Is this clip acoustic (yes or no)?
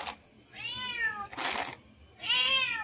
no